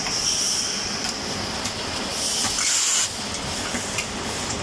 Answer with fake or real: real